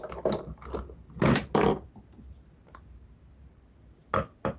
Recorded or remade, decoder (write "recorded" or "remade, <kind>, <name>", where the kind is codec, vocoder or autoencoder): recorded